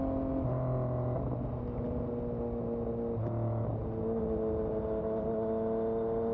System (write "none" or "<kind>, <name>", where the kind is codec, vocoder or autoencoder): none